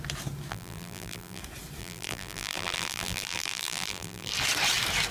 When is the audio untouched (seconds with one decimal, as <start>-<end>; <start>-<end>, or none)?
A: 0.0-0.5; 1.4-1.8; 4.3-5.1